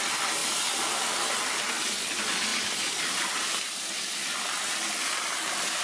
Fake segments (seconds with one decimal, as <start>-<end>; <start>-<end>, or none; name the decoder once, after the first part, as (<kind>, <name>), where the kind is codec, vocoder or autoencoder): 0.4-1.0 (vocoder, BigVGAN v2); 2.5-5.0